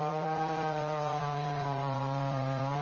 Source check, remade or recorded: remade